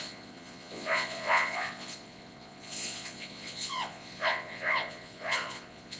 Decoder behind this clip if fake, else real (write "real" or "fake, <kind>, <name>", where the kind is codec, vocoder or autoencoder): fake, vocoder, Vocos